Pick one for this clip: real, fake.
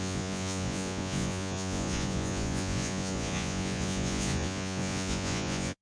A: fake